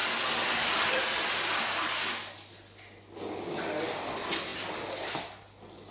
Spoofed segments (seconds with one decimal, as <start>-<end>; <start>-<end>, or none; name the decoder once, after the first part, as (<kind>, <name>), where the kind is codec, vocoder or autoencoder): none

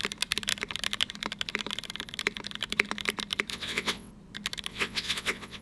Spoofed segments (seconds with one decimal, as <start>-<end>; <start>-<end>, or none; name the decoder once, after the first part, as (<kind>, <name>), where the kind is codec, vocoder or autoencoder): 3.5-4.1 (vocoder, WaveNeXt); 4.7-5.6

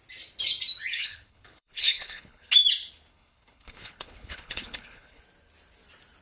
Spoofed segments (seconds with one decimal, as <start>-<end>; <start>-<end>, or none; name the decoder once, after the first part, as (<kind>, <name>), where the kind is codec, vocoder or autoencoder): 0.9-2.5 (codec, HILCodec); 3.1-5.2

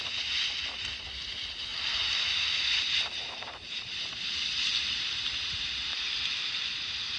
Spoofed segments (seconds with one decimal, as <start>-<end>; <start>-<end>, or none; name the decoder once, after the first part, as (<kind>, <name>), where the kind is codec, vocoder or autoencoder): 1.7-2.3 (vocoder, BigVGAN v2); 3.2-3.9

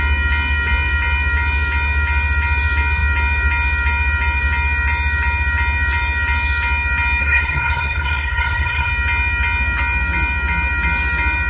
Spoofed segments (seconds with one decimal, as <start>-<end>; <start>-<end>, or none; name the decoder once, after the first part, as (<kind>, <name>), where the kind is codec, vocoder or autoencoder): 7.2-8.9 (codec, SNAC)

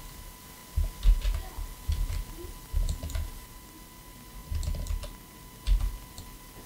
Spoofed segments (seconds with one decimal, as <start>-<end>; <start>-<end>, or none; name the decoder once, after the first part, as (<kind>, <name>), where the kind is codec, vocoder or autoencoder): none

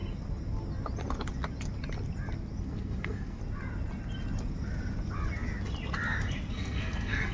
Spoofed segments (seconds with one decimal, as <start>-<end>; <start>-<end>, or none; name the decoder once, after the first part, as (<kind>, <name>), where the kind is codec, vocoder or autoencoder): 2.6-3.4 (codec, SNAC); 6.5-7.3